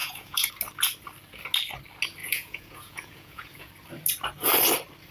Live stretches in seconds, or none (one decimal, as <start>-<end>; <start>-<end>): 0.5-2.2; 3.7-5.1